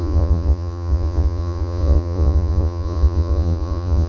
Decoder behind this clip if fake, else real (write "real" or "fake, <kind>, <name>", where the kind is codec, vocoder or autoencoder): fake, vocoder, Vocos